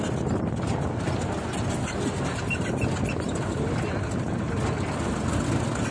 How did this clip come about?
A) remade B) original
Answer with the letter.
B